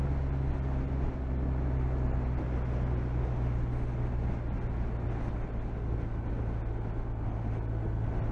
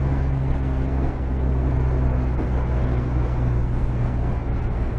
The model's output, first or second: second